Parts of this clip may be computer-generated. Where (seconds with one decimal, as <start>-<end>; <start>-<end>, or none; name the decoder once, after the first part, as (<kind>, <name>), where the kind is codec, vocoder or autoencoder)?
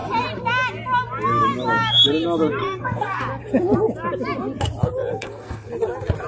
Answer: 2.6-3.2 (codec, SNAC); 5.1-5.7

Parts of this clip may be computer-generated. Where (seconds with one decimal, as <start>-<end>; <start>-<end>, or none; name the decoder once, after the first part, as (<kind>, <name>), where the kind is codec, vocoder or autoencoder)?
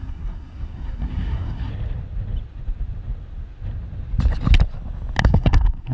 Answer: 0.0-1.7 (codec, SNAC); 5.2-5.9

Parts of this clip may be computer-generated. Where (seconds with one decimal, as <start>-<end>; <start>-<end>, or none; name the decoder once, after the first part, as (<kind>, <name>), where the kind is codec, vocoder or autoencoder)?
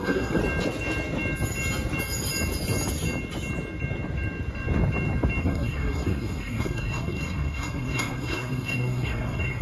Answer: 0.0-0.4 (codec, SNAC); 5.4-9.6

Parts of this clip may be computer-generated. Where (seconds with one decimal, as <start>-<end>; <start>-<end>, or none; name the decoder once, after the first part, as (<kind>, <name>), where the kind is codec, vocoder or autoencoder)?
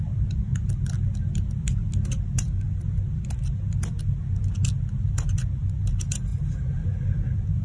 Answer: none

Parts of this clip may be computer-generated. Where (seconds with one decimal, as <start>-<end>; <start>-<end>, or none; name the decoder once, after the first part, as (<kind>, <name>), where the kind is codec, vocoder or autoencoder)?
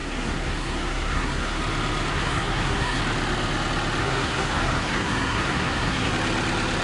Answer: 0.0-1.6 (codec, SNAC); 2.1-3.0; 4.0-6.1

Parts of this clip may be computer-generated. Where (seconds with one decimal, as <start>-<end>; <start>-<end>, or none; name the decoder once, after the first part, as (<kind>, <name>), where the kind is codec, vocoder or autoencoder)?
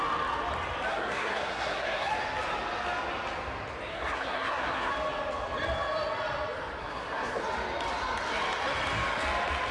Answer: 0.9-2.1 (codec, SNAC); 3.9-4.9; 6.8-7.4